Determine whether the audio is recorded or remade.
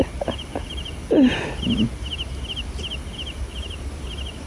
recorded